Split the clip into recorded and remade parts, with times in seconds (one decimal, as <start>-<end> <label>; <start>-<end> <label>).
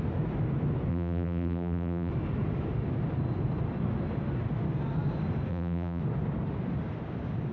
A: 0.0-0.9 recorded; 0.9-2.1 remade; 2.1-5.5 recorded; 5.5-6.0 remade; 6.0-7.5 recorded